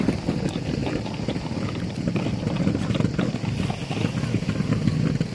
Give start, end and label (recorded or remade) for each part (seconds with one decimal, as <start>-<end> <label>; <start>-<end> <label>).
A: 0.0-5.3 recorded